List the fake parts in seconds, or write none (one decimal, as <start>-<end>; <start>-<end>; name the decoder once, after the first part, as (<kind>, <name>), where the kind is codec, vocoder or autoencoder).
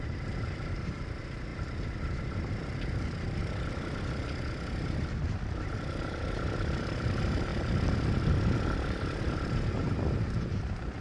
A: none